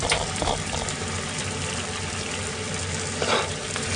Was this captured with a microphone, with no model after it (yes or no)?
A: yes